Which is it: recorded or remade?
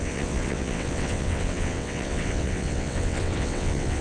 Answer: remade